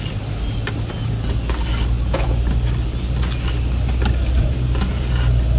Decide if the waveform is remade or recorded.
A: recorded